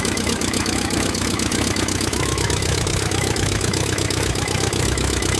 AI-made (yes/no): yes